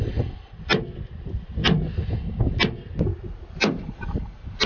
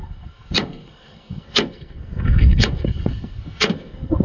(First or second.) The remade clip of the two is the second